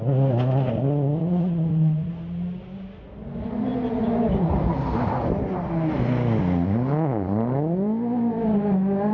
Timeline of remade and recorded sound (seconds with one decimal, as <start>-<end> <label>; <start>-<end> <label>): 0.0-1.2 recorded; 1.2-2.1 remade; 2.1-9.1 recorded